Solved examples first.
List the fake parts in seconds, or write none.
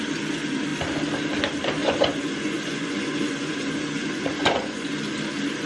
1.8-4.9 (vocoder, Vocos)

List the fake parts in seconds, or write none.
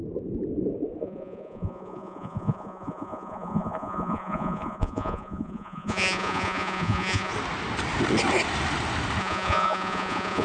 1.0-7.3 (vocoder, Vocos); 9.2-10.4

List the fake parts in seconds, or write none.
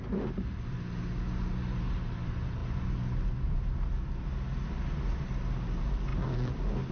none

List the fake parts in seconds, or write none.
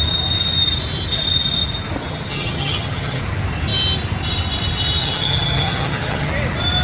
2.0-3.2 (vocoder, HiFi-GAN); 5.0-6.3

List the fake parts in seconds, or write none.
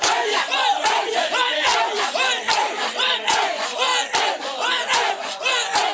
0.0-1.7 (vocoder, Vocos); 3.0-3.9; 4.4-5.9